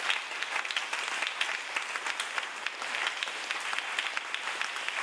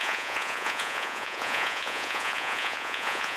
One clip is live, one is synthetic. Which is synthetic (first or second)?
second